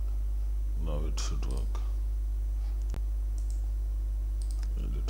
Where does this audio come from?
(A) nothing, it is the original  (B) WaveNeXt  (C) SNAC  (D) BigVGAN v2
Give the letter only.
A